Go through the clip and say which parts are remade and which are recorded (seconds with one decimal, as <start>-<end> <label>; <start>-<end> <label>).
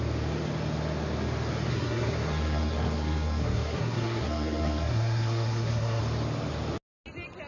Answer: 0.0-1.7 recorded; 1.7-6.0 remade; 6.0-7.5 recorded